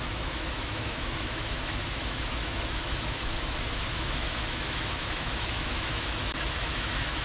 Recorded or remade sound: remade